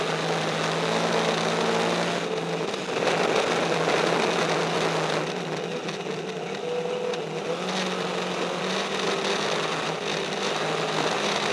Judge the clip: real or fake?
real